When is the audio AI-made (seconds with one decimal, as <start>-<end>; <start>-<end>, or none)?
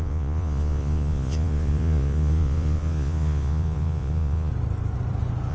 0.0-4.5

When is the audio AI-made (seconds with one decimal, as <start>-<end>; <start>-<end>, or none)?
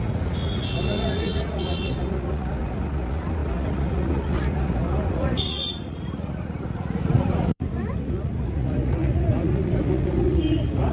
0.0-10.9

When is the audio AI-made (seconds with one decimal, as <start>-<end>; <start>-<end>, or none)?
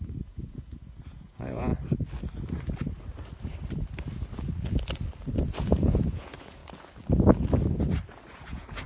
0.0-1.7; 5.5-6.6; 8.1-8.9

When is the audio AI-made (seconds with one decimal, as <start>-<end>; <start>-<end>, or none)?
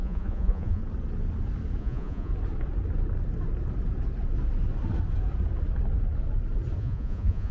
0.0-0.8; 1.8-2.3; 6.8-7.5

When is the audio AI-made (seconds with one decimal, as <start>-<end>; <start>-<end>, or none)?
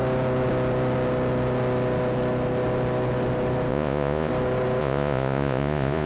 3.7-4.3; 4.8-6.1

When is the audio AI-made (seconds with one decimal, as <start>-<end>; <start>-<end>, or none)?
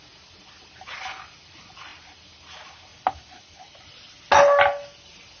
none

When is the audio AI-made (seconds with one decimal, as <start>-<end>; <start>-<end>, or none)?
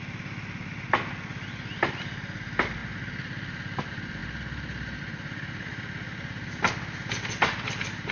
none